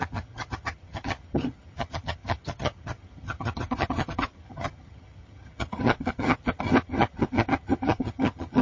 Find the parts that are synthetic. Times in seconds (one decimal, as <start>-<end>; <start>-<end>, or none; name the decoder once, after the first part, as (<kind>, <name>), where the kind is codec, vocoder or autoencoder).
0.0-8.6 (vocoder, HiFi-GAN)